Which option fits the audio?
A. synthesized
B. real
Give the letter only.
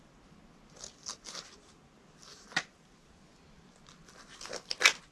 B